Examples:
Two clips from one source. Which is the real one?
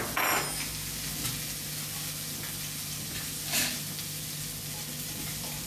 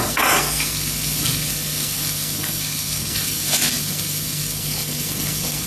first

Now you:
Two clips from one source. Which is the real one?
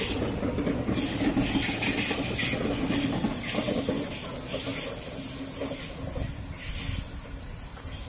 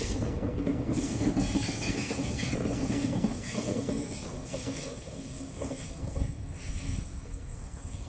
first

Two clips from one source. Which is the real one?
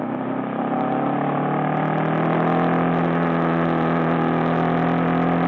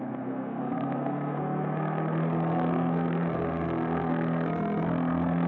first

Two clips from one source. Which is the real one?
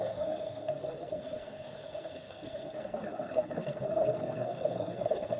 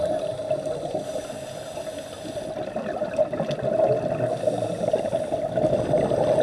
second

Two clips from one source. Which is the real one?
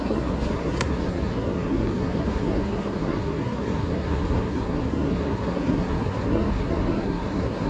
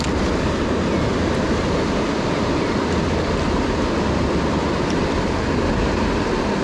second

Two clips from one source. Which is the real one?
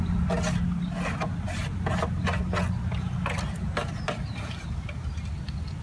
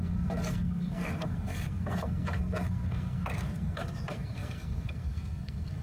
first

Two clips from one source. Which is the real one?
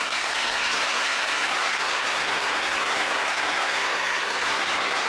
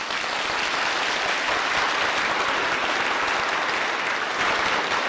second